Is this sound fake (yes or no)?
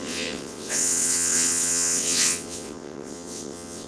yes